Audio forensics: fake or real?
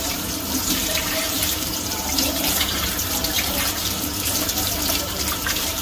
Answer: fake